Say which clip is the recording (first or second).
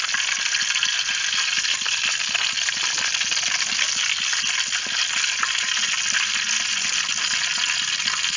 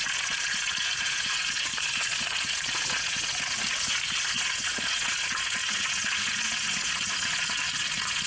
first